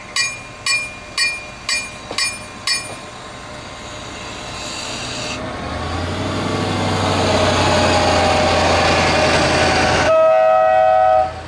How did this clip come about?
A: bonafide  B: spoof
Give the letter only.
A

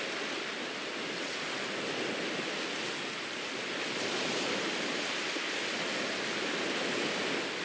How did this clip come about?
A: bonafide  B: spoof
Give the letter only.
A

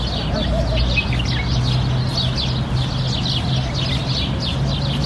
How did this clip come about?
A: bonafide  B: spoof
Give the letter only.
A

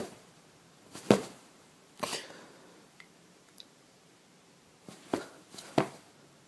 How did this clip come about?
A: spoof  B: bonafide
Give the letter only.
A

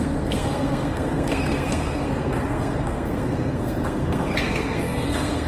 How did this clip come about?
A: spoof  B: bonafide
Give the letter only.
A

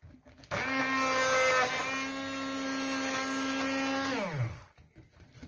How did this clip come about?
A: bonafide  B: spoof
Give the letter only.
A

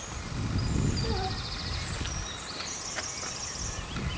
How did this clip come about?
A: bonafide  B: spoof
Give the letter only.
A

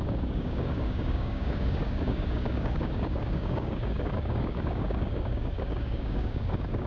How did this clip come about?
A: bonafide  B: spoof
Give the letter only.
B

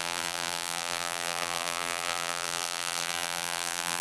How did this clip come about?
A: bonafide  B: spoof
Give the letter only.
B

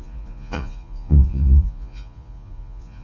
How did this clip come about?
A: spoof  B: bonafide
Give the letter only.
A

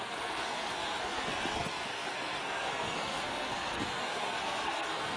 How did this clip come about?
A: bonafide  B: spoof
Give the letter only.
B